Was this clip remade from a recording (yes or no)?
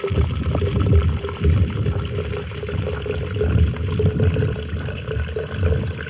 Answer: no